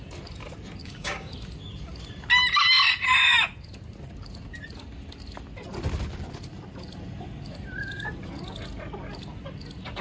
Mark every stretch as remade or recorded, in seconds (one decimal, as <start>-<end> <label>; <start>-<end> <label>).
0.0-0.8 recorded; 0.8-1.3 remade; 1.3-10.0 recorded